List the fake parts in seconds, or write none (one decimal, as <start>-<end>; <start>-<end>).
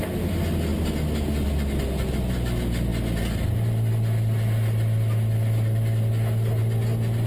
none